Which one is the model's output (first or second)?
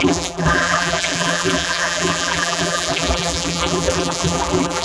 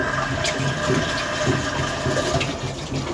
first